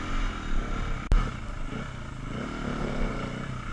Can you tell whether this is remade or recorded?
recorded